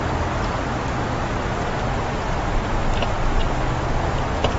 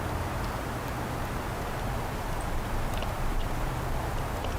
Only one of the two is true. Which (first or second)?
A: first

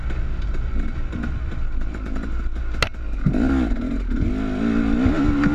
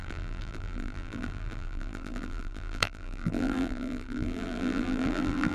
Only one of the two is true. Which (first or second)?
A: first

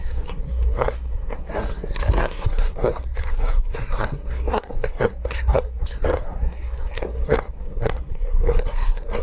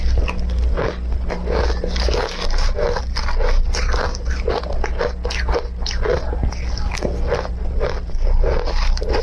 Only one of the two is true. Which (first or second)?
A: second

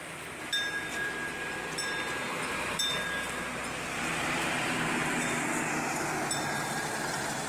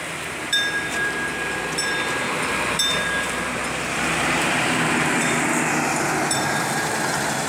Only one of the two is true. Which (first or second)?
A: first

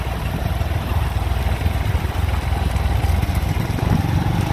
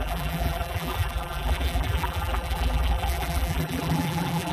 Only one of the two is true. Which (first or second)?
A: first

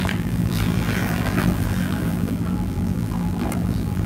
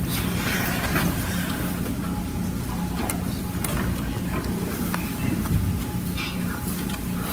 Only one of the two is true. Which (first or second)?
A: second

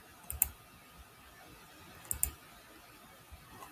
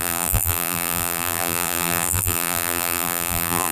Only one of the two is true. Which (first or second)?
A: first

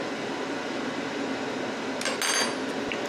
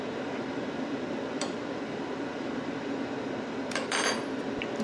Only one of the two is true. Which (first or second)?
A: first